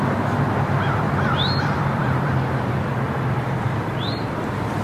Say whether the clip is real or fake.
fake